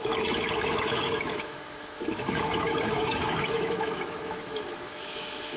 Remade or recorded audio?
remade